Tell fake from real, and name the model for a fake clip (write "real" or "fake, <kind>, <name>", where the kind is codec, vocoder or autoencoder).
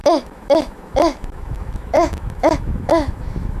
fake, autoencoder, DAC-VAE